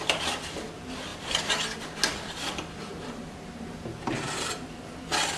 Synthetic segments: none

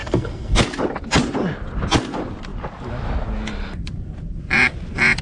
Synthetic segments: 0.0-0.6

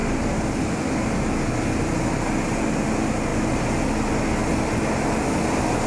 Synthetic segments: none

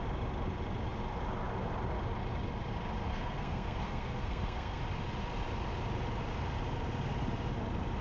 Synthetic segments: 3.1-4.8

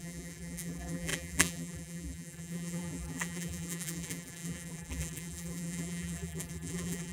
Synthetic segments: 0.0-7.1

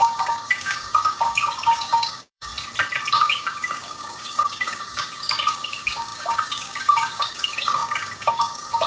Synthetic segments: 0.0-2.5; 3.1-8.9